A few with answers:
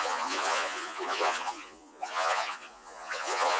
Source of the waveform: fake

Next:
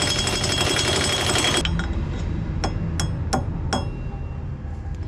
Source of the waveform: real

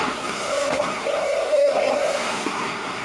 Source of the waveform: fake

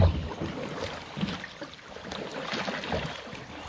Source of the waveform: real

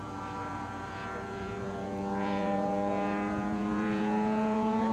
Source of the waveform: fake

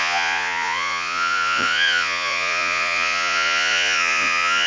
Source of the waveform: fake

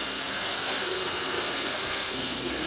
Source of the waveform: fake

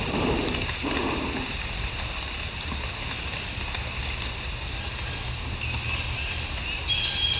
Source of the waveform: real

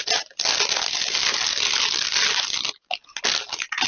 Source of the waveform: real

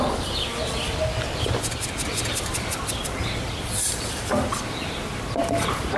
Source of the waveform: real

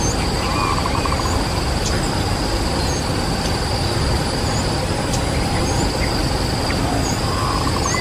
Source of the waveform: real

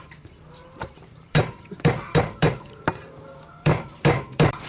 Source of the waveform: fake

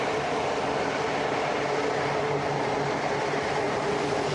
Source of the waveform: real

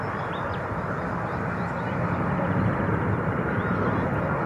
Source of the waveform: real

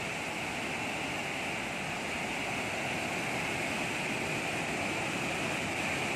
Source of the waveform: real